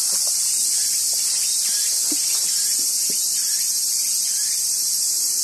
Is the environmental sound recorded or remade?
recorded